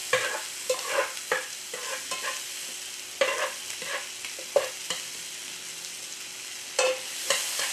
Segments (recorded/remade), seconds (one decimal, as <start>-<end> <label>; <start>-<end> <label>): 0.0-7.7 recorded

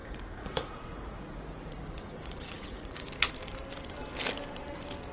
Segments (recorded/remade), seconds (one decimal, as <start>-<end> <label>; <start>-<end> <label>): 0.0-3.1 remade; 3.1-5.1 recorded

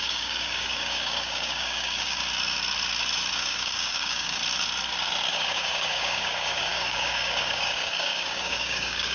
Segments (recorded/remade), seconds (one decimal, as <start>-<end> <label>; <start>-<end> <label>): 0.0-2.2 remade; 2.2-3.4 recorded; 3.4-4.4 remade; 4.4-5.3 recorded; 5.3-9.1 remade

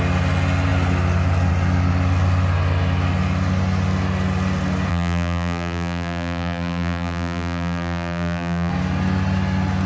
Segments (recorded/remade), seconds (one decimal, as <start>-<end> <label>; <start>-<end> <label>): 0.0-4.9 recorded; 4.9-8.7 remade; 8.7-9.9 recorded

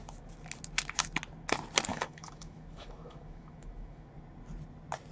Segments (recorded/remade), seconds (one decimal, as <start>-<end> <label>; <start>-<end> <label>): 0.0-1.9 recorded; 1.9-4.1 remade; 4.1-5.1 recorded

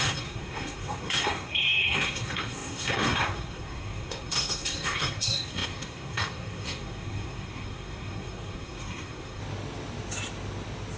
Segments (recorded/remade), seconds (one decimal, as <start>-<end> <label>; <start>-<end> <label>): 0.0-9.4 remade; 9.4-11.0 recorded

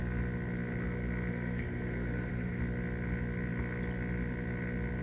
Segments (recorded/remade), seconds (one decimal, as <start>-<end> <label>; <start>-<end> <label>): 0.0-1.3 recorded; 1.3-2.6 remade; 2.6-5.0 recorded

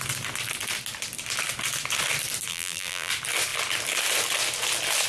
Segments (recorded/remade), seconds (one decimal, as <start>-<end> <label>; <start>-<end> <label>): 0.0-2.5 recorded; 2.5-3.1 remade; 3.1-5.1 recorded